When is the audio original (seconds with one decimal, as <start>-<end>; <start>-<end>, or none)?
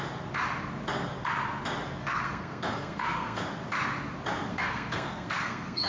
0.0-2.0; 3.4-4.5